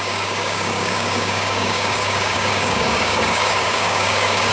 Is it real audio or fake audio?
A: fake